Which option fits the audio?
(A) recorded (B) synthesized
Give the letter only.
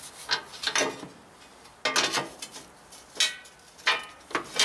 A